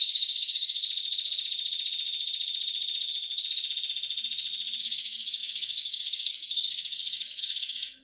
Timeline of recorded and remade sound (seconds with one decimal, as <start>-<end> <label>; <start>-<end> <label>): 0.0-0.8 remade; 0.8-4.8 recorded; 4.8-8.0 remade